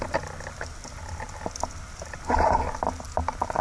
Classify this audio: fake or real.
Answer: real